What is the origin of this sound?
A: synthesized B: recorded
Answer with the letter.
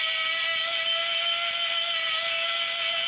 B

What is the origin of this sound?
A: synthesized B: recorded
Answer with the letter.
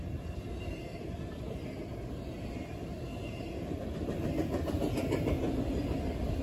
B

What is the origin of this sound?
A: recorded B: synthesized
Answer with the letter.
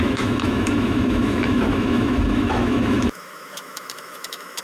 B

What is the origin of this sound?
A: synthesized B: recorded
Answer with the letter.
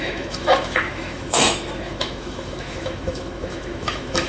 A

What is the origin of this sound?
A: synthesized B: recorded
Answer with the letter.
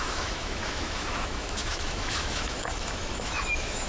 A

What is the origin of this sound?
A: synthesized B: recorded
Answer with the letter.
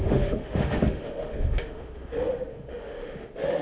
A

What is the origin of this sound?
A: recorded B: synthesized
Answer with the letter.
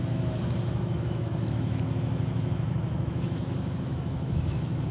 B